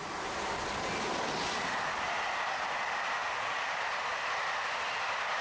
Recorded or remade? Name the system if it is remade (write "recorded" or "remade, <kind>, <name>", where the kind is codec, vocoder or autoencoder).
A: recorded